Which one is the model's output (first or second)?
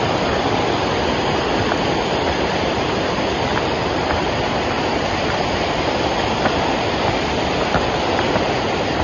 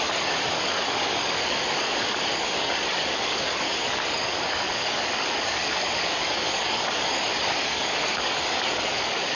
second